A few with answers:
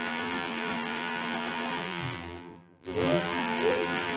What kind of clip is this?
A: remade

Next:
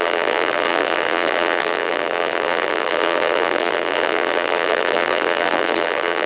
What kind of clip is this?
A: remade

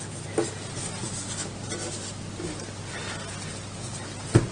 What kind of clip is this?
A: recorded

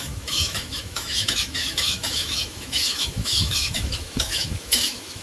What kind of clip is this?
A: remade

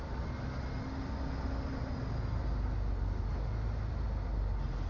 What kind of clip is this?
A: recorded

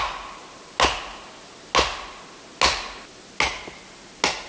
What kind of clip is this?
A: recorded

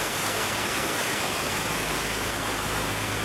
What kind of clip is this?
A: remade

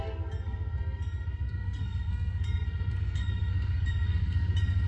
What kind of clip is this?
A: remade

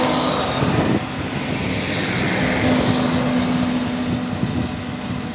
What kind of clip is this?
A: recorded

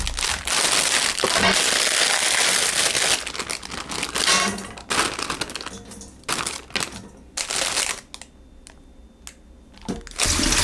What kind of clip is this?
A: recorded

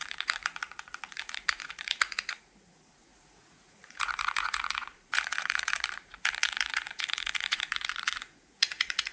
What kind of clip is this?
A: remade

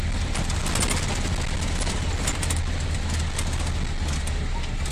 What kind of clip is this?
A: recorded